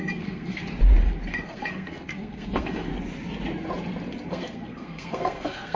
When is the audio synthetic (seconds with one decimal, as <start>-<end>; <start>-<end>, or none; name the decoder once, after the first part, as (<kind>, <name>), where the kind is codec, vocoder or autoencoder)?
0.0-0.6 (codec, SNAC); 1.3-2.9; 4.3-5.8